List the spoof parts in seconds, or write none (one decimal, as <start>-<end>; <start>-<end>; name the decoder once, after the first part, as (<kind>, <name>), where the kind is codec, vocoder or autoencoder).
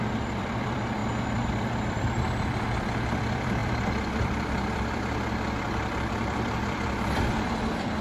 0.0-8.0 (vocoder, BigVGAN v2)